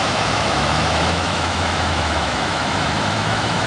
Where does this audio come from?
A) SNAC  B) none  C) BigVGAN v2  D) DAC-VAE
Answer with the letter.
D